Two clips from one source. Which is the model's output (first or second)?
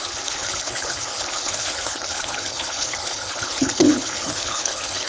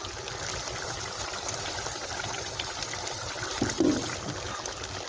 first